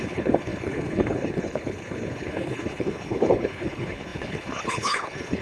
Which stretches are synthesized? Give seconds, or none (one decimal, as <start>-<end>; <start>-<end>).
0.0-5.4